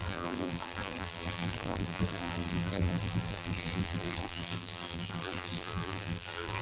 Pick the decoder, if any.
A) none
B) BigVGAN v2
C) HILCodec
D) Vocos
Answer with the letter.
B